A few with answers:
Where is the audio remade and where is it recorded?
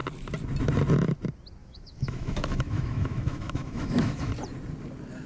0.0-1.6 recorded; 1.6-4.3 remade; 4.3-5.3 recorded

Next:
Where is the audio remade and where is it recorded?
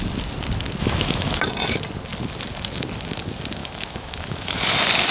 0.0-0.8 recorded; 0.8-1.4 remade; 1.4-3.6 recorded; 3.6-4.6 remade; 4.6-5.1 recorded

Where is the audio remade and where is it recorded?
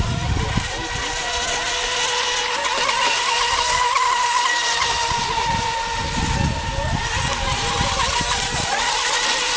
0.0-9.6 recorded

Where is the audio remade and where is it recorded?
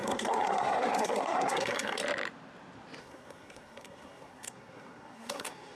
0.0-2.0 remade; 2.0-3.0 recorded; 3.0-5.8 remade